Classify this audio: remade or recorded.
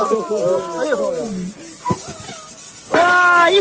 recorded